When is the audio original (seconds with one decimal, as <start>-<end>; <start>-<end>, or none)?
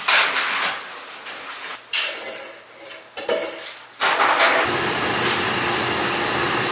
0.0-6.7